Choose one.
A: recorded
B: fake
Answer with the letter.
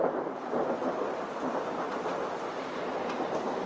B